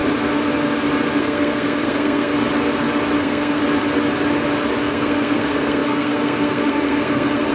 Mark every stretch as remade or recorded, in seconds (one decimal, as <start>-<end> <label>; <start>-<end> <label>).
0.0-1.2 recorded; 1.2-2.3 remade; 2.3-3.2 recorded; 3.2-3.6 remade; 3.6-4.8 recorded; 4.8-7.5 remade